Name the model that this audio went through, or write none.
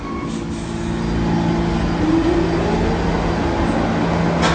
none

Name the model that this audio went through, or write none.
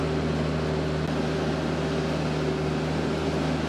none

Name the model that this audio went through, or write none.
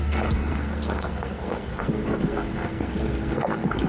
codec, SNAC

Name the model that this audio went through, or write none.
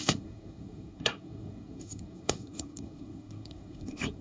codec, SNAC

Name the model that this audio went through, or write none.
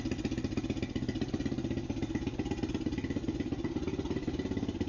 none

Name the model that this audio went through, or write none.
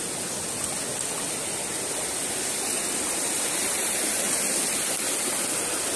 none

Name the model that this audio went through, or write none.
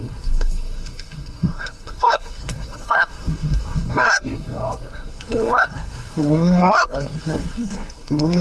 codec, SNAC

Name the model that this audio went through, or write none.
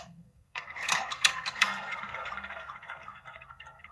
codec, SNAC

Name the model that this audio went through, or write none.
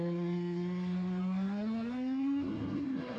codec, SNAC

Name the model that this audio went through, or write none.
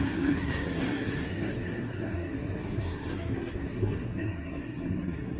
codec, SNAC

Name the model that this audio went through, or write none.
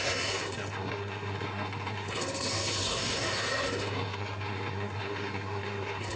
codec, SNAC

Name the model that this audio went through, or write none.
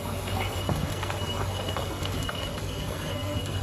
codec, SNAC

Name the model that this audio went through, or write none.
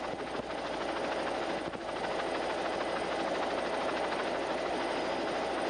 none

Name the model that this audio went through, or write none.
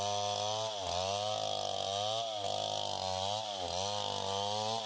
none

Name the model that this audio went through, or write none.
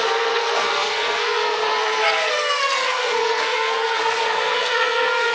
codec, SNAC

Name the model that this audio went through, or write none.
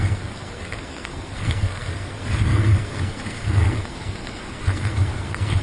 codec, SNAC